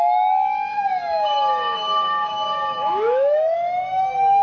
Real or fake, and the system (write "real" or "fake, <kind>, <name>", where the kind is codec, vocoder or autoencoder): fake, autoencoder, DAC-VAE